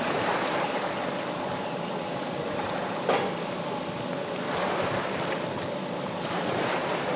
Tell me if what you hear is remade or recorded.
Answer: recorded